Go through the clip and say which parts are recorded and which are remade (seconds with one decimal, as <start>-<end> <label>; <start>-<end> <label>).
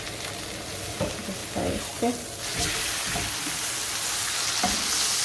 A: 0.0-1.4 recorded; 1.4-4.5 remade; 4.5-5.2 recorded